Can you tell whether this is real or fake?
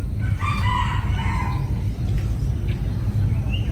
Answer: real